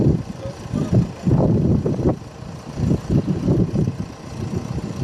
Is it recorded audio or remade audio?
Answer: remade